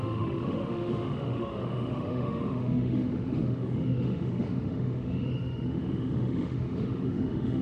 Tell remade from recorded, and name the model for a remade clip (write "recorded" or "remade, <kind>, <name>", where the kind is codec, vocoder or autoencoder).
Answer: remade, autoencoder, DAC-VAE